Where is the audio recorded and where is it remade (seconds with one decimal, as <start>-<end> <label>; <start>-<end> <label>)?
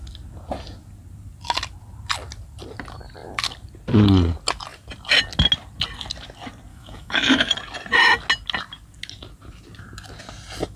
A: 0.0-6.7 recorded; 6.7-7.5 remade; 7.5-10.8 recorded